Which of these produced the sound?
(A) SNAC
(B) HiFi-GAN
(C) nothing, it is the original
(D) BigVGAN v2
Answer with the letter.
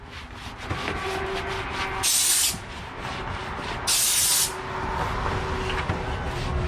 C